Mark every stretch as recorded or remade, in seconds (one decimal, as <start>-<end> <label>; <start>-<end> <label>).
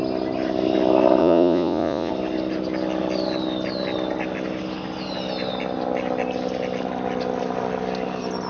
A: 0.0-1.2 recorded; 1.2-2.1 remade; 2.1-8.5 recorded